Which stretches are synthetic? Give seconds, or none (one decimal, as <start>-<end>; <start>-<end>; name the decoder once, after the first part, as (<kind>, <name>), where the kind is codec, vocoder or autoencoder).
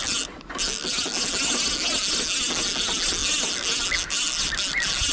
none